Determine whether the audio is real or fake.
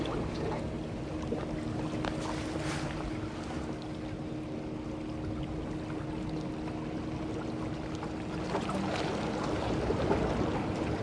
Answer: real